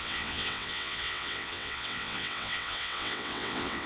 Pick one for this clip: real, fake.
fake